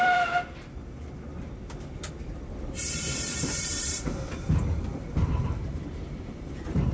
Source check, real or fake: fake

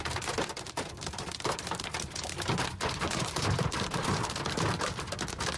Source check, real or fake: fake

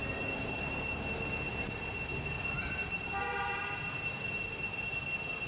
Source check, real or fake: real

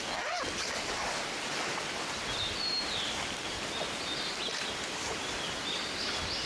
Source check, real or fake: real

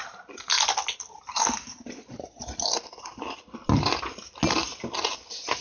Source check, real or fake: real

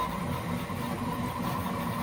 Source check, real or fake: real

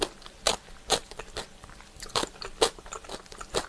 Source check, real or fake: fake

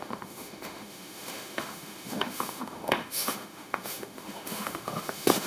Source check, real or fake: fake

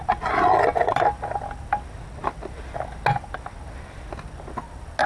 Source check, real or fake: real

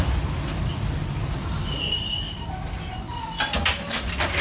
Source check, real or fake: real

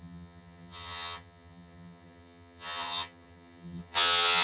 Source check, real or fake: fake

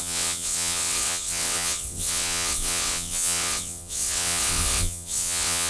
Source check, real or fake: fake